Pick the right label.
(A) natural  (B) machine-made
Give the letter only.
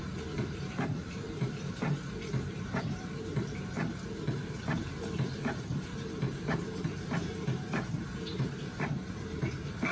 B